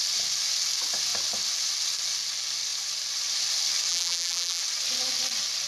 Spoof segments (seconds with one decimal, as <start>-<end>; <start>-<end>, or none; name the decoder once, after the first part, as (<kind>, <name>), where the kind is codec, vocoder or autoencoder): 3.9-4.6 (vocoder, BigVGAN v2)